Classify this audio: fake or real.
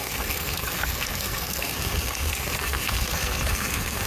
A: fake